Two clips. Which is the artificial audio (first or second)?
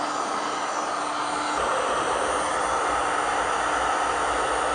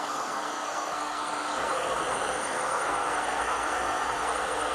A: second